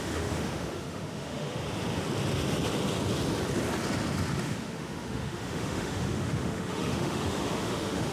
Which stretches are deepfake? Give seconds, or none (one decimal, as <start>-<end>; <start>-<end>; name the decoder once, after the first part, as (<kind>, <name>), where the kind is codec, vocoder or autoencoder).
0.0-1.6 (autoencoder, DAC-VAE); 4.4-8.1